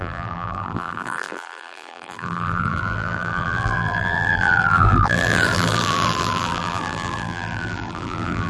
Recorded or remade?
remade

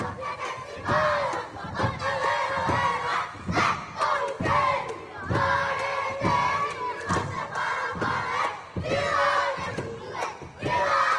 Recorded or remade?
recorded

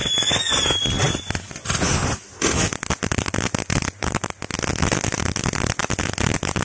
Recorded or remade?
recorded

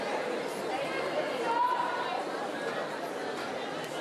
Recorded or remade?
recorded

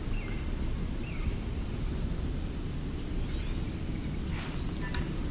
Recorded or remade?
recorded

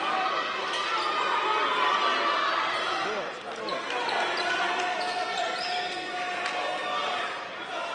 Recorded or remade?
recorded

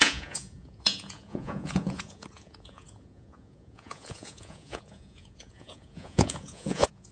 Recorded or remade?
remade